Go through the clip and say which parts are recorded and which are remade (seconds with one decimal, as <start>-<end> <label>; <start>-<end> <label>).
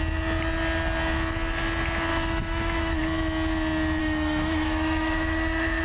0.0-2.1 recorded; 2.1-2.9 remade; 2.9-4.0 recorded; 4.0-5.8 remade